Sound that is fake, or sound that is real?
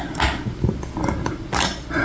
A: real